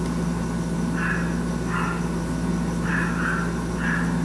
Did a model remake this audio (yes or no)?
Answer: no